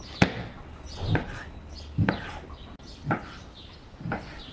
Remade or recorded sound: recorded